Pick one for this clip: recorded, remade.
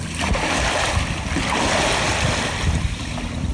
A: recorded